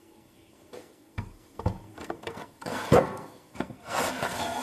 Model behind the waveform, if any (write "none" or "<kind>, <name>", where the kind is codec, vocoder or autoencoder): codec, SNAC